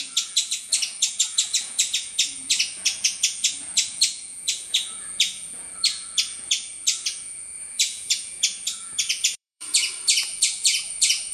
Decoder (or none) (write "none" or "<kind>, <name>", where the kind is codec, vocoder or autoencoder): vocoder, Vocos